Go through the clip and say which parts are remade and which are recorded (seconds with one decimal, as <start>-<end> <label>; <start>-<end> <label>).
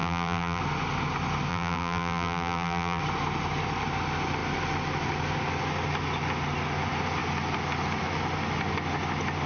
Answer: 0.0-0.6 remade; 0.6-1.5 recorded; 1.5-3.0 remade; 3.0-9.5 recorded